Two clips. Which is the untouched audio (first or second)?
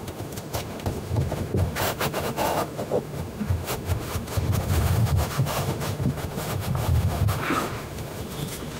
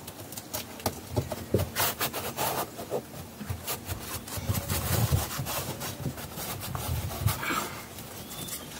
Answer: second